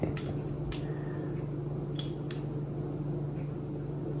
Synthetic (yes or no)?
no